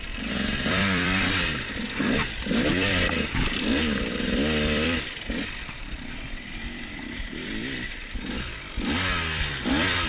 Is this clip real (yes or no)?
no